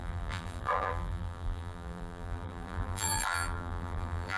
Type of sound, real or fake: fake